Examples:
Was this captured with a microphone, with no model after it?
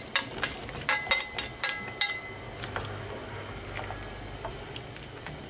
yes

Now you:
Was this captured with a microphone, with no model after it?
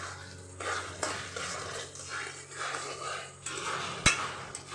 yes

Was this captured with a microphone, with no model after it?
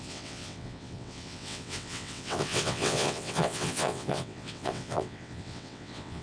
no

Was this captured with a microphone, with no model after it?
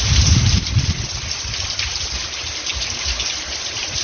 yes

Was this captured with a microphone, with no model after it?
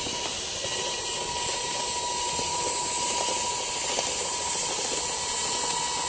yes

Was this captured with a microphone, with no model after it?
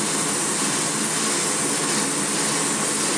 yes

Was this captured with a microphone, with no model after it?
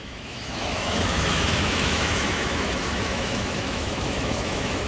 no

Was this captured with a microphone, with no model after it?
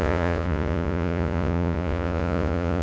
no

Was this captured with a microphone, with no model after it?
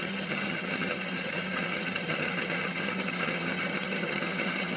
no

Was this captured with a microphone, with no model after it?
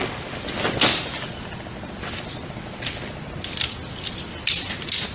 yes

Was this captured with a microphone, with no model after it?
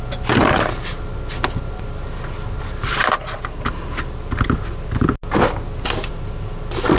yes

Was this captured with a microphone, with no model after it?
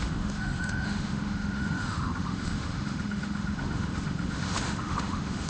no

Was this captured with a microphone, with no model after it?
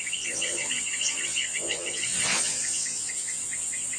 no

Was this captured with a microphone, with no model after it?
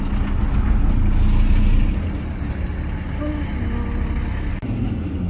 yes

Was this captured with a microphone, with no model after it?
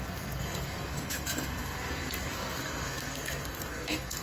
no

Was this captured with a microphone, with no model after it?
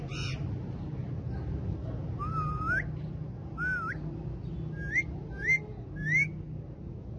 yes